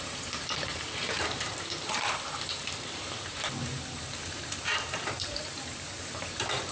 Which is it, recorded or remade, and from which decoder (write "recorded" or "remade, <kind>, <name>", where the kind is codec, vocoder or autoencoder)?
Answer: remade, vocoder, BigVGAN v2